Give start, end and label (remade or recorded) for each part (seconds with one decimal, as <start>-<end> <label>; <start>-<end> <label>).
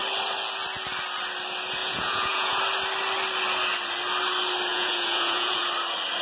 0.0-1.8 recorded; 1.8-2.6 remade; 2.6-4.7 recorded; 4.7-5.6 remade; 5.6-6.2 recorded